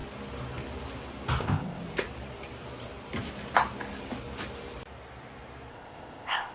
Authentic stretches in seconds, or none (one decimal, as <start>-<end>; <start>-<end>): 0.0-1.4; 1.8-5.7